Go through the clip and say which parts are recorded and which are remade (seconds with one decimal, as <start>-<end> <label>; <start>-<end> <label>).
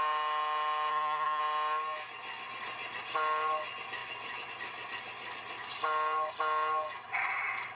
0.0-0.9 recorded; 0.9-1.4 remade; 1.4-7.8 recorded